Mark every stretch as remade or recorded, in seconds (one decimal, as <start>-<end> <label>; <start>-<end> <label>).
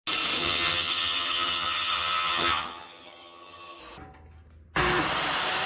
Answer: 0.0-0.4 recorded; 0.4-3.8 remade; 3.8-5.7 recorded